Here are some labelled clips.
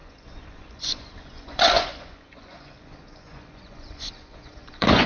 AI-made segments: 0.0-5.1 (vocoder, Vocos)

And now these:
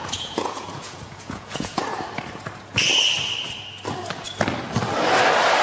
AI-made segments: 0.0-1.8 (vocoder, Vocos)

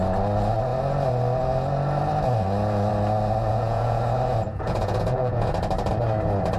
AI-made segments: 3.5-4.0 (vocoder, Vocos); 4.5-5.5

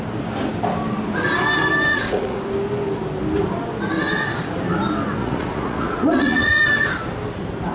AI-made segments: 1.9-2.4 (vocoder, Vocos); 5.2-6.6

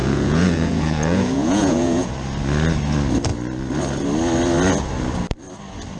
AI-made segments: 0.0-2.1 (vocoder, Vocos)

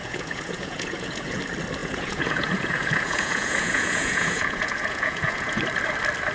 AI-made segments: 0.0-1.4 (vocoder, Vocos); 1.8-5.6